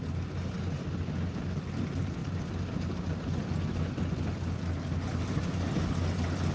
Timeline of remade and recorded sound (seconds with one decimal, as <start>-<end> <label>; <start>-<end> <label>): 0.0-6.5 recorded